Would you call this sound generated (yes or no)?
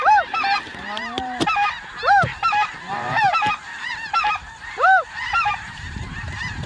yes